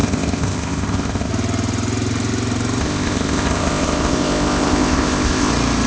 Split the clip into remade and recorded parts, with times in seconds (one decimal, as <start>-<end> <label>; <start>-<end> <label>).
0.0-1.3 remade; 1.3-2.8 recorded; 2.8-5.5 remade; 5.5-5.9 recorded